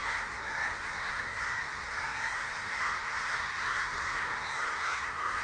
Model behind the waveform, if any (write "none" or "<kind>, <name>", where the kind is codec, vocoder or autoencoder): codec, SNAC